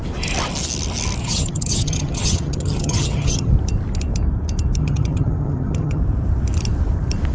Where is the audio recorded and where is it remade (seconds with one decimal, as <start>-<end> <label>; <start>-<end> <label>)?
0.0-1.2 recorded; 1.2-3.5 remade; 3.5-4.8 recorded; 4.8-6.0 remade; 6.0-7.3 recorded